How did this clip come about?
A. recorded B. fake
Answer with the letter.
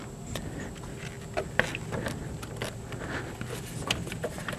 A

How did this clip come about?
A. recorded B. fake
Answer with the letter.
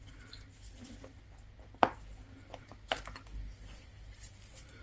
A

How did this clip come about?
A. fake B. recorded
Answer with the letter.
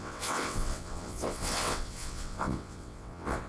A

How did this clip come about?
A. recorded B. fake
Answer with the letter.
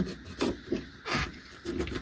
A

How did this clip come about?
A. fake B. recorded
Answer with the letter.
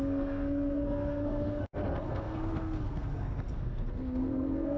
A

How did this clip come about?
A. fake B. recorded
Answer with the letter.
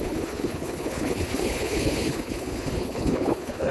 A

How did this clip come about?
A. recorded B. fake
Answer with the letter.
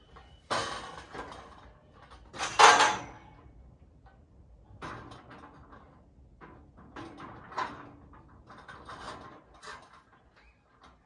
A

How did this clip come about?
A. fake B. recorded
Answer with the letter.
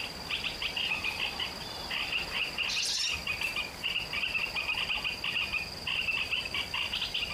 B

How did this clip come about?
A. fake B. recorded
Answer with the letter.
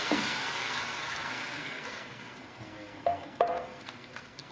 A